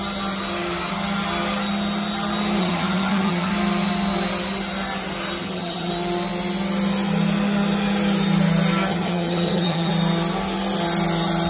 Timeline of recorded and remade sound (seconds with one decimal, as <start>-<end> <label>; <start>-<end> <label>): 0.0-2.6 recorded; 2.6-3.5 remade; 3.5-5.4 recorded; 5.4-5.9 remade; 5.9-8.9 recorded; 8.9-9.9 remade; 9.9-11.5 recorded